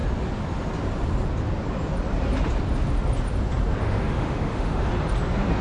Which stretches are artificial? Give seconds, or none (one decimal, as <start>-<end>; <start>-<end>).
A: 3.8-4.9

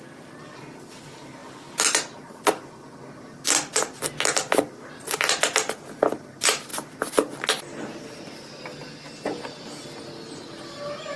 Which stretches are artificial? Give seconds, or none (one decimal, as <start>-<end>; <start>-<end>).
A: none

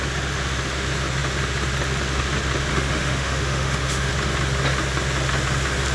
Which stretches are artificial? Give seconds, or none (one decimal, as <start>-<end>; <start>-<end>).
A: 2.7-4.1

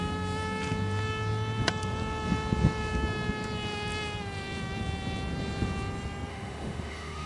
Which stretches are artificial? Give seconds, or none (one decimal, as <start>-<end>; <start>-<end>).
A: 6.3-7.3

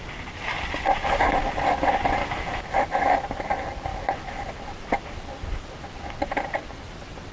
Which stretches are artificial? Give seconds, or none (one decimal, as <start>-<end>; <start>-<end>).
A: 2.2-3.2; 3.9-4.6

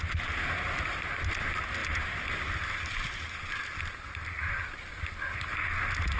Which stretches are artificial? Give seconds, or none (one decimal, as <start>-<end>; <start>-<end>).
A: none

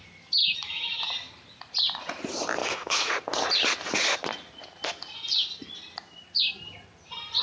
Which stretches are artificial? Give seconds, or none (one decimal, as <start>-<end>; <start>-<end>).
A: 0.4-1.1; 2.6-3.1